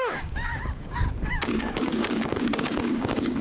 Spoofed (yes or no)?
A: yes